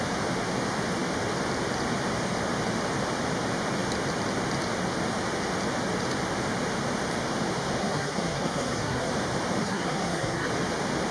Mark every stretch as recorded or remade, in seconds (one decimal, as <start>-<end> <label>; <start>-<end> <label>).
0.0-7.8 recorded; 7.8-9.1 remade; 9.1-9.6 recorded; 9.6-10.5 remade; 10.5-11.1 recorded